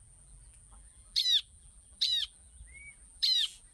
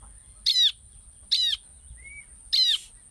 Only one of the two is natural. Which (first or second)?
second